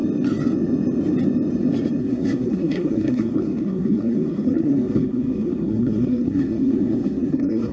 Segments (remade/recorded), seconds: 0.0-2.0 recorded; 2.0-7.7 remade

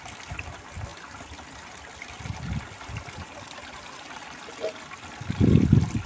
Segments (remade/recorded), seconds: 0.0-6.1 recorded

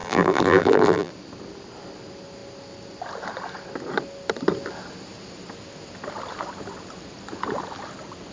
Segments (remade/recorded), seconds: 0.0-1.1 remade; 1.1-8.3 recorded

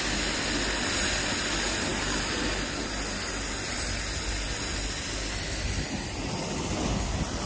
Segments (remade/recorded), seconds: 0.0-7.5 recorded

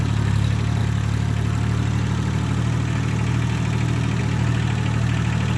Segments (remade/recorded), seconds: 0.0-5.6 recorded

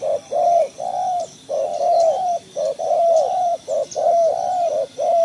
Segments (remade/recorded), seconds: 0.0-1.0 remade; 1.0-1.8 recorded; 1.8-5.2 remade